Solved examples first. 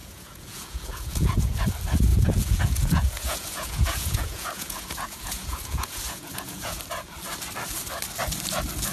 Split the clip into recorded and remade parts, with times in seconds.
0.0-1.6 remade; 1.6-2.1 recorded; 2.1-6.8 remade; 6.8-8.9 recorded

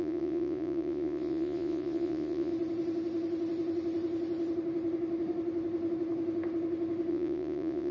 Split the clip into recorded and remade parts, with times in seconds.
0.0-2.5 remade; 2.5-7.1 recorded; 7.1-7.9 remade

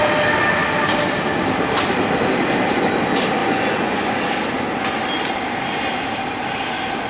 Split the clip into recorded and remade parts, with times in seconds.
0.0-3.4 recorded; 3.4-4.2 remade; 4.2-7.1 recorded

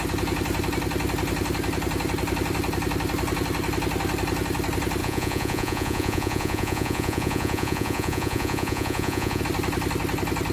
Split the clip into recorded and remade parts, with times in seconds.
0.0-5.0 recorded; 5.0-9.4 remade; 9.4-10.5 recorded

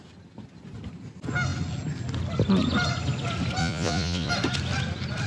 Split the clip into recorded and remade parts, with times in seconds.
0.0-3.6 recorded; 3.6-4.3 remade; 4.3-5.3 recorded